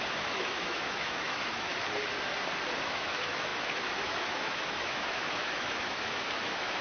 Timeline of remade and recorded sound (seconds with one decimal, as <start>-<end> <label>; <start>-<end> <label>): 0.0-1.7 remade; 1.7-2.8 recorded; 2.8-6.8 remade